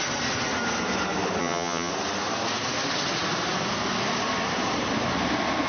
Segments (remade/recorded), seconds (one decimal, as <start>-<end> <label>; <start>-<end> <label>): 0.0-1.4 recorded; 1.4-1.9 remade; 1.9-5.7 recorded

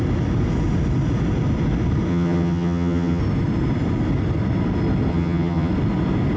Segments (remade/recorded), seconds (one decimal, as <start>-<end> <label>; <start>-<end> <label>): 0.0-2.1 recorded; 2.1-3.2 remade; 3.2-5.1 recorded; 5.1-5.7 remade; 5.7-6.4 recorded

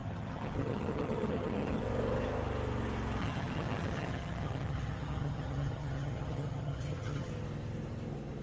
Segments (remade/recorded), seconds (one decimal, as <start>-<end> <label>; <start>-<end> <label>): 0.0-1.8 remade; 1.8-3.2 recorded; 3.2-7.3 remade; 7.3-8.4 recorded

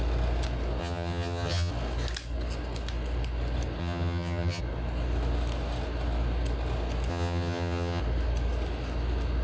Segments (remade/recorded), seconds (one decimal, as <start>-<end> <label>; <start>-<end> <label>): 0.0-0.8 recorded; 0.8-1.7 remade; 1.7-3.8 recorded; 3.8-4.6 remade; 4.6-7.1 recorded; 7.1-8.0 remade; 8.0-9.4 recorded

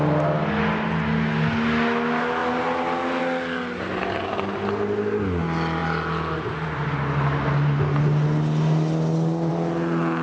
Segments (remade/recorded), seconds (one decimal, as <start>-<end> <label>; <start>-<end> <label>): 0.0-10.2 recorded

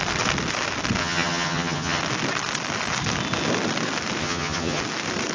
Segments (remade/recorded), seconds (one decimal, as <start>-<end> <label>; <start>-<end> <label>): 0.0-1.0 recorded; 1.0-2.0 remade; 2.0-4.2 recorded; 4.2-4.8 remade; 4.8-5.3 recorded